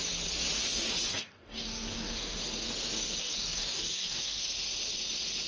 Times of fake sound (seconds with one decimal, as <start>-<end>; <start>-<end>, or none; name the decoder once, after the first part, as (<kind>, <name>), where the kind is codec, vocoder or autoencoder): 1.1-2.4 (codec, DAC); 3.2-4.4